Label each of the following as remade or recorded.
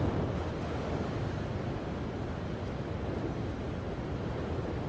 recorded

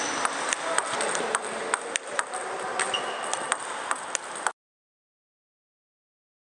recorded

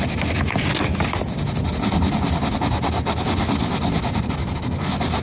recorded